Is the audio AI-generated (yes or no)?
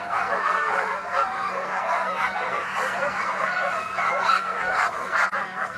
yes